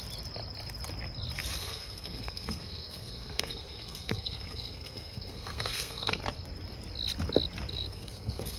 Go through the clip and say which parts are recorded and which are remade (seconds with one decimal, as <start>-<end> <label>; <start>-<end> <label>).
0.0-1.6 recorded; 1.6-6.2 remade; 6.2-7.7 recorded; 7.7-8.6 remade